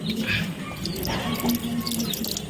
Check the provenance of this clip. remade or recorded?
recorded